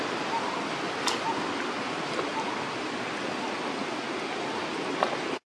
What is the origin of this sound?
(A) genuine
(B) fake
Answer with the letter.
A